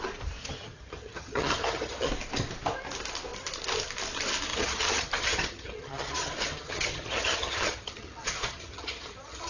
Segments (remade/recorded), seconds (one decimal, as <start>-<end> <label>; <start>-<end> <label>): 0.0-0.4 recorded; 0.4-2.1 remade; 2.1-4.5 recorded; 4.5-9.5 remade